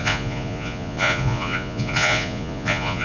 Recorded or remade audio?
remade